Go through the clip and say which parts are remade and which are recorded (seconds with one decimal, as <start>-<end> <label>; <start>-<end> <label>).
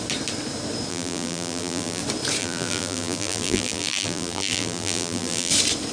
0.0-0.9 recorded; 0.9-2.0 remade; 2.0-2.4 recorded; 2.4-5.5 remade; 5.5-5.9 recorded